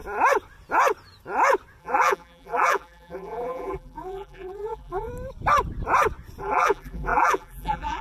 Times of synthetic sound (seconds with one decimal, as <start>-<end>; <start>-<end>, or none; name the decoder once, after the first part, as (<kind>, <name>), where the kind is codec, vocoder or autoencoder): 1.8-5.1 (vocoder, BigVGAN v2); 6.4-8.0